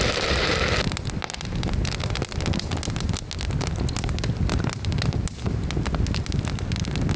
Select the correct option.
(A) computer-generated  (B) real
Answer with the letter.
B